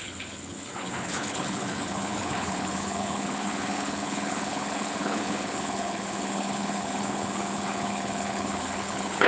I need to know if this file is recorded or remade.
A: remade